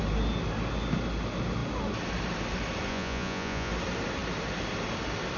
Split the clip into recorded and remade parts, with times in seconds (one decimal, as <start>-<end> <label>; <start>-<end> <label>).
0.0-2.9 recorded; 2.9-3.7 remade; 3.7-5.4 recorded